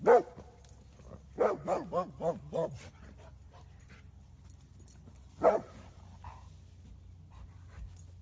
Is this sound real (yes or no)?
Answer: yes